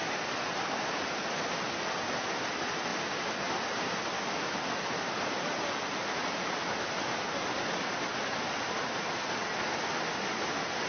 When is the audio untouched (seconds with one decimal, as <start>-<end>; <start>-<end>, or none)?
0.0-2.9; 5.7-10.9

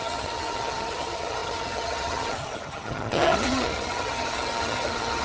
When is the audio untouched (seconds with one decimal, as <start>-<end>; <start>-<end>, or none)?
none

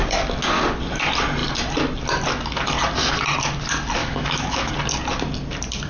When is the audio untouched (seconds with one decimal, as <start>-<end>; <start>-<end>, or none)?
0.0-4.0; 4.7-5.9

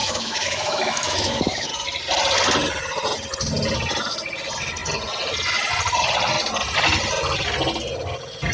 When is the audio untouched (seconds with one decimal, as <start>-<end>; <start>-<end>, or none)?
1.7-8.5

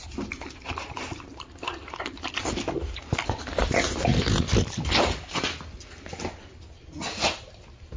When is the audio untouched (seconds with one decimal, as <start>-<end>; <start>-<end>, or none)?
0.0-8.0

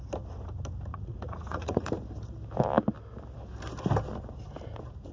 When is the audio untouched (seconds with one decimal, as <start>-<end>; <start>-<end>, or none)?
0.0-0.9; 1.9-5.1

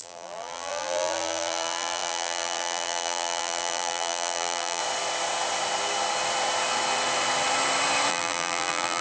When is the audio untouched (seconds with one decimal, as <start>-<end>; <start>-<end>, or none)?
4.8-8.1

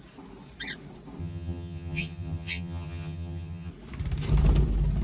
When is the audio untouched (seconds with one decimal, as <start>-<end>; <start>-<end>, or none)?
0.0-1.2; 3.7-5.0